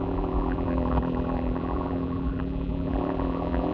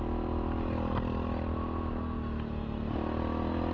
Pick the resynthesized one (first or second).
first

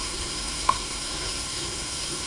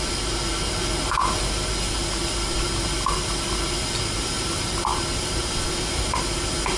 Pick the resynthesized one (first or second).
first